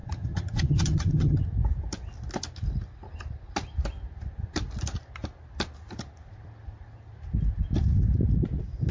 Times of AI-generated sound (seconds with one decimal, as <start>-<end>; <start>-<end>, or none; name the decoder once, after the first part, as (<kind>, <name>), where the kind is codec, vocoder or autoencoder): 0.0-1.4 (vocoder, HiFi-GAN)